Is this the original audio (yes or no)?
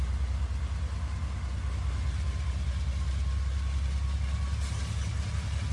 yes